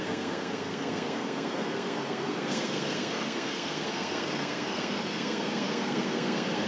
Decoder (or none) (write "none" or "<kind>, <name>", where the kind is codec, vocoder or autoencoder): codec, SNAC